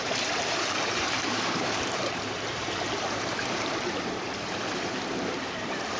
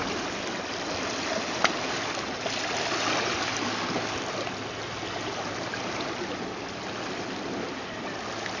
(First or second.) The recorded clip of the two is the second